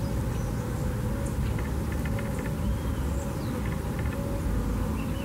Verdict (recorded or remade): recorded